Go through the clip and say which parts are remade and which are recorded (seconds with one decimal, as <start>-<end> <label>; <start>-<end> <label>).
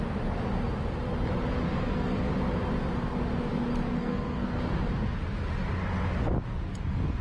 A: 0.0-1.7 recorded; 1.7-2.3 remade; 2.3-4.0 recorded; 4.0-4.6 remade; 4.6-7.2 recorded